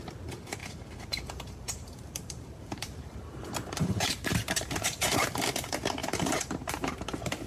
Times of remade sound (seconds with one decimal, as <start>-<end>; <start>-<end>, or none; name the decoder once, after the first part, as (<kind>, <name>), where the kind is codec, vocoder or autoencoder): 0.6-5.1 (vocoder, BigVGAN v2); 6.0-7.5